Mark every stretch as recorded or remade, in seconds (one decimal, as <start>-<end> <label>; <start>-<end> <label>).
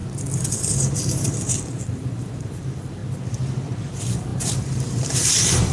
0.0-0.5 recorded; 0.5-3.0 remade; 3.0-3.9 recorded; 3.9-5.7 remade